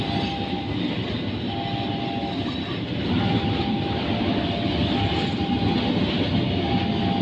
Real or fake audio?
real